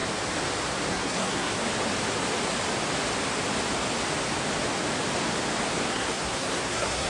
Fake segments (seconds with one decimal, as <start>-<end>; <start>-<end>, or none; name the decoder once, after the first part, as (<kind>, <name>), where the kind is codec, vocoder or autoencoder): 0.9-1.6 (codec, SNAC); 5.9-7.1

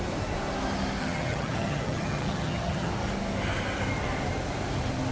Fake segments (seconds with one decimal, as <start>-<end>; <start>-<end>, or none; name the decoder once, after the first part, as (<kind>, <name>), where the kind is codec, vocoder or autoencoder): 1.0-2.9 (vocoder, HiFi-GAN)